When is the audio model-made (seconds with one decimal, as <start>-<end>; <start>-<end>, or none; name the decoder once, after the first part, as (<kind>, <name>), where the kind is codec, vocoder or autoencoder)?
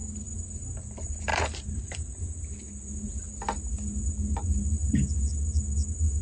1.3-2.2 (vocoder, BigVGAN v2); 4.3-4.9